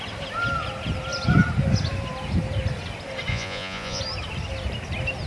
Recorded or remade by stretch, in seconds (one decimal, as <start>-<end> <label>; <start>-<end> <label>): 0.0-3.3 recorded; 3.3-4.0 remade; 4.0-5.3 recorded